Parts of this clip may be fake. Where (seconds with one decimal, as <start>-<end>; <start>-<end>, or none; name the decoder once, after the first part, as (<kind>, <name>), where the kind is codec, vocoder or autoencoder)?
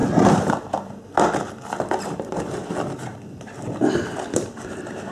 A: none